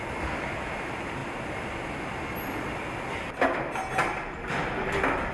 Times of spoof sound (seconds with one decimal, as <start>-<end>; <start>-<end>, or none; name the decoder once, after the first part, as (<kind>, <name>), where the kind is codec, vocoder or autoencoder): none